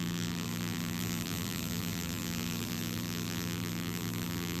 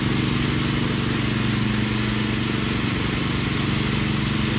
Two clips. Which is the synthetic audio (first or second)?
first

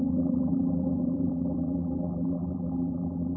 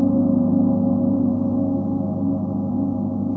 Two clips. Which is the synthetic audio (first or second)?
first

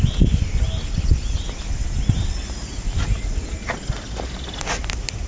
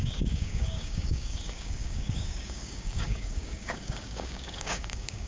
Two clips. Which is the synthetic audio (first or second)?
second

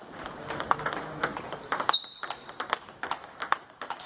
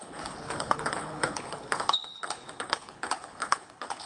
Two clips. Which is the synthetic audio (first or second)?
second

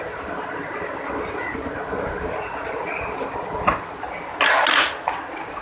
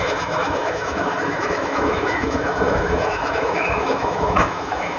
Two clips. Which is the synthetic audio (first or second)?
second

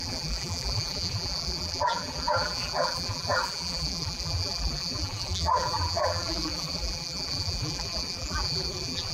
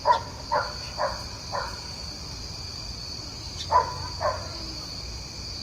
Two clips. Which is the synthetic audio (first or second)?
first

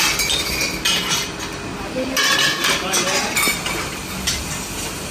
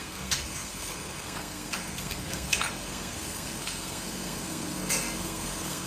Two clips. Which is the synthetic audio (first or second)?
second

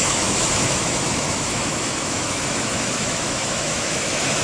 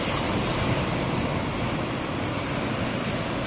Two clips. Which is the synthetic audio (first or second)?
first